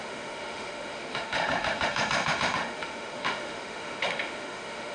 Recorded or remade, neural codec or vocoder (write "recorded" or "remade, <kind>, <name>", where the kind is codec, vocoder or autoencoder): remade, autoencoder, DAC-VAE